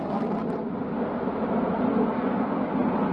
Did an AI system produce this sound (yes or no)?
no